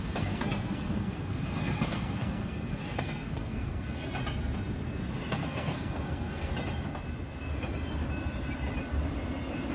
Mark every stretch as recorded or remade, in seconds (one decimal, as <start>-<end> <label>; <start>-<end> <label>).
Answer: 0.0-4.2 remade; 4.2-5.3 recorded; 5.3-6.5 remade; 6.5-9.7 recorded